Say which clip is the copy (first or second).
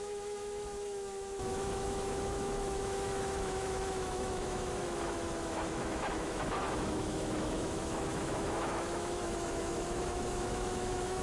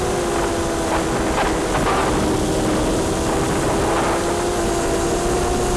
first